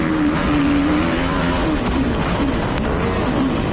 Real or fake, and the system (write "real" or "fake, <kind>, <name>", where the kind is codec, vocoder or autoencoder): real